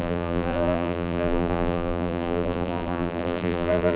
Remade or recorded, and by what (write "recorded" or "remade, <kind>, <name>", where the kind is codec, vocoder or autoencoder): remade, vocoder, BigVGAN v2